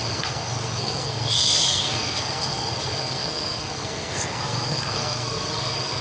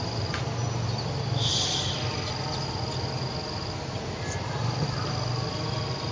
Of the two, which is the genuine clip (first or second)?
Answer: second